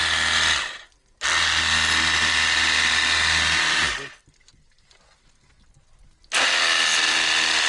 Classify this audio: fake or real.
real